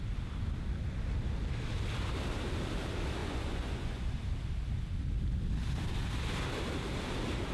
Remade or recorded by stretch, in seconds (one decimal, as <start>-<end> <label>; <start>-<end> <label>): 0.0-3.2 recorded; 3.2-4.2 remade; 4.2-7.5 recorded